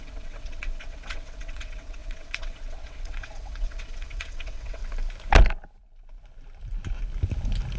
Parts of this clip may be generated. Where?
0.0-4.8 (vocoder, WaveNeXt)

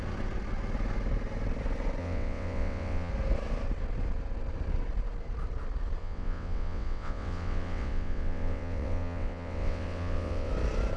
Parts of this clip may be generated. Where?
2.0-3.1 (vocoder, WaveNeXt); 6.0-10.5

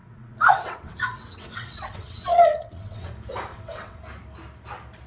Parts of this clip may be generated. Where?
0.0-3.1 (vocoder, WaveNeXt); 3.5-4.0